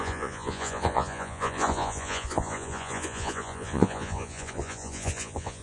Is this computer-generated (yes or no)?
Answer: yes